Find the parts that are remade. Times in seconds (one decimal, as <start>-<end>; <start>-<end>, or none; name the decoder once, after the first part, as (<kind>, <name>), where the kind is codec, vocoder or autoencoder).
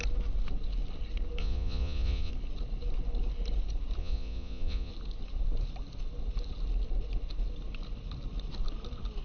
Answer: 1.4-2.3 (vocoder, Vocos); 4.0-4.9